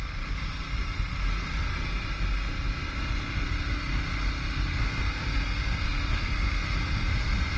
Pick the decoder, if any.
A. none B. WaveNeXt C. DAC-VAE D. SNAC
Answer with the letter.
A